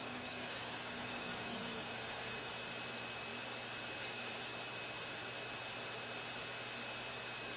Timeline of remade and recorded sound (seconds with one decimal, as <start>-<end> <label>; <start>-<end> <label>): 0.0-2.5 remade; 2.5-7.6 recorded